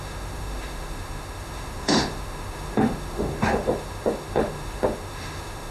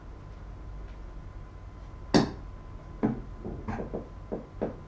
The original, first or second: second